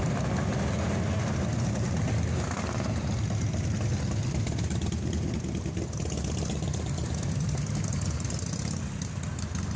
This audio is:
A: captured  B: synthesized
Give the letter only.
A